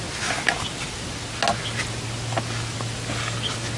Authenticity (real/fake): real